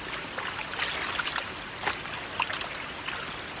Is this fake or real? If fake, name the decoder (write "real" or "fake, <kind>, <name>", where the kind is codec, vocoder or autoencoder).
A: real